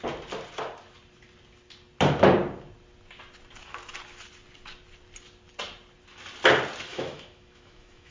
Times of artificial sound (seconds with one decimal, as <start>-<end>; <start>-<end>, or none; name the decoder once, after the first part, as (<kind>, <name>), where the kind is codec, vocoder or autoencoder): 6.9-8.1 (autoencoder, DAC-VAE)